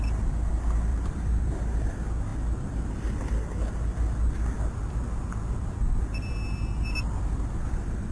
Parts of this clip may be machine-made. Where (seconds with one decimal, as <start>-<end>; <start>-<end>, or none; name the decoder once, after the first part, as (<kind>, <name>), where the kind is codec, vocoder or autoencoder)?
0.9-1.9 (vocoder, BigVGAN v2)